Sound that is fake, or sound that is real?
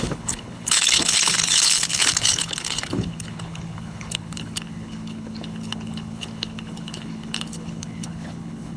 fake